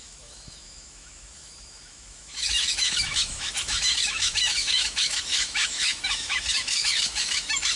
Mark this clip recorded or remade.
remade